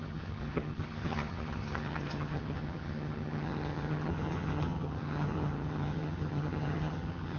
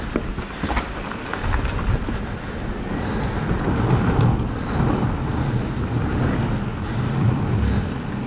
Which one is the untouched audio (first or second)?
second